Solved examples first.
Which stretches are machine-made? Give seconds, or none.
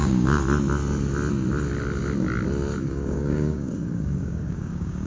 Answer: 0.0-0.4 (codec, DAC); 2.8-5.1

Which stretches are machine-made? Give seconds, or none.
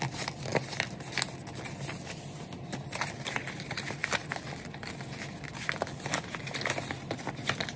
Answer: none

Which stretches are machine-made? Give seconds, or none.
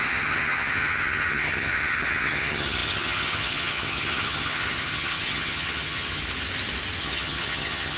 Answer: 0.0-6.2 (vocoder, HiFi-GAN); 7.0-8.0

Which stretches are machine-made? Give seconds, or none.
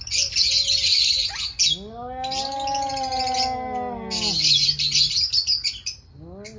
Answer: none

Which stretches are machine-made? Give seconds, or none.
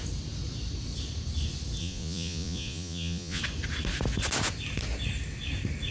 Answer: 1.8-3.4 (vocoder, Vocos)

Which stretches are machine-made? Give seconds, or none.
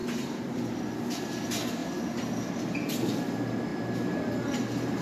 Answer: none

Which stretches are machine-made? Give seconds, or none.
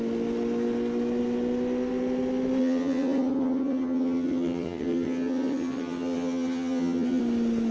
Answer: 2.6-7.2 (vocoder, HiFi-GAN)